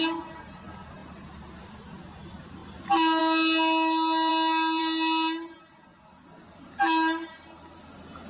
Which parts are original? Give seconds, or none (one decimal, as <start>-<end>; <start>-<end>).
0.0-8.3